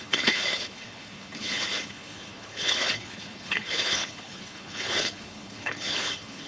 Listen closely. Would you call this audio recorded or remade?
remade